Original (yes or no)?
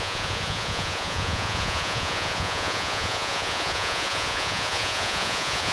no